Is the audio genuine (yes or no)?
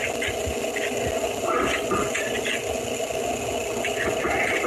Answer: yes